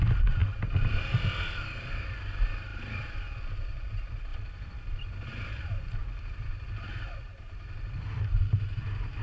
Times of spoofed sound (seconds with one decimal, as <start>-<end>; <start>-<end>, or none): none

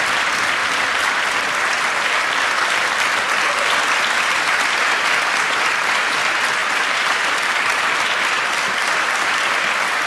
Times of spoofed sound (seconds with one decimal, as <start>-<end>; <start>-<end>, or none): 0.0-0.6; 1.1-10.1

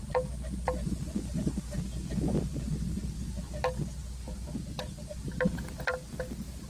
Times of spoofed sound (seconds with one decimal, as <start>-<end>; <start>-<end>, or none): none

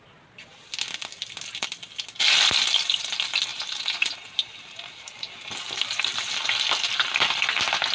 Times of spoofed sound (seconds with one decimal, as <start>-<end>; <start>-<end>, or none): 3.5-6.3

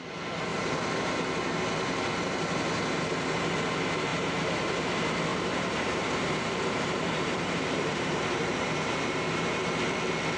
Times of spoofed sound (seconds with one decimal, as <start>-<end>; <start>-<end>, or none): 0.5-1.1; 4.1-4.8; 5.3-9.8

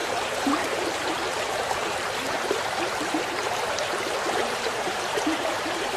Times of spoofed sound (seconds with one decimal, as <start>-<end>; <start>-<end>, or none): 0.0-6.0